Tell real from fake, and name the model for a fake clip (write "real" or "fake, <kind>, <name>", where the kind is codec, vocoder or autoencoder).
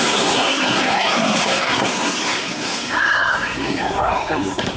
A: fake, codec, SNAC